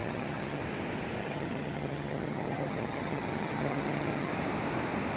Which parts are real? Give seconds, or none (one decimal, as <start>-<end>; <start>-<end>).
0.6-1.2; 4.3-5.2